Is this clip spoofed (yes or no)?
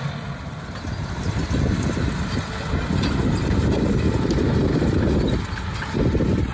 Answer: no